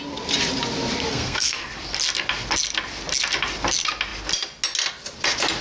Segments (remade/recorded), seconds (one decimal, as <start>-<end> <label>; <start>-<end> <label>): 0.0-1.1 recorded; 1.1-1.7 remade; 1.7-5.6 recorded